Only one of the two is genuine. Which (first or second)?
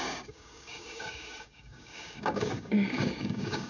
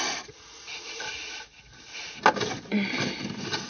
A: second